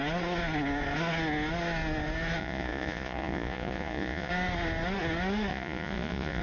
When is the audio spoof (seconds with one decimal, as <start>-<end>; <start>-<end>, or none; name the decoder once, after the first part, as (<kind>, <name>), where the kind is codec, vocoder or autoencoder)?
2.4-4.3 (vocoder, Vocos); 5.5-6.4